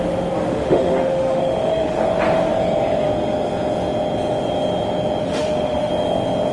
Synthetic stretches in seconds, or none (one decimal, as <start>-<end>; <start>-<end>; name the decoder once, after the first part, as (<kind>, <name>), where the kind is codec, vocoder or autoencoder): 0.4-2.0 (autoencoder, DAC-VAE); 5.2-5.9